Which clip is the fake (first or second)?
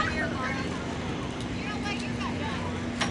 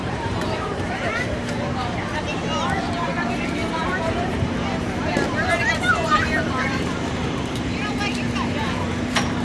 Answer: second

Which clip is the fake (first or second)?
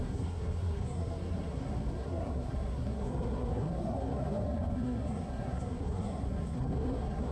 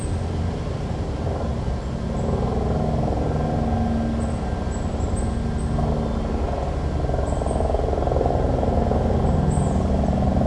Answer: first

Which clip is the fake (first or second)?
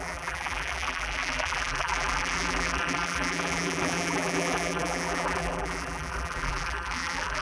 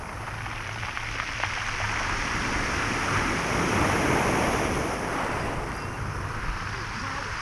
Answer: first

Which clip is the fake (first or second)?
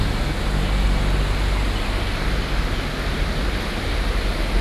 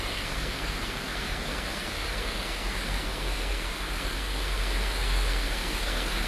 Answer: second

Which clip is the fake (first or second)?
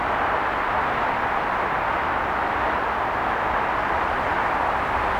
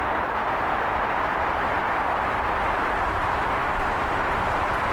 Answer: second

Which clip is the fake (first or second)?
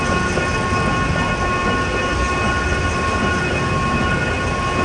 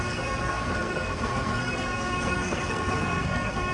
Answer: second